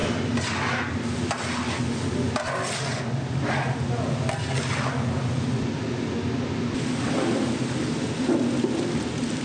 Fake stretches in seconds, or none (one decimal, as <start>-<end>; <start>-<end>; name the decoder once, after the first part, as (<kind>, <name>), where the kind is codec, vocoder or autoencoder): none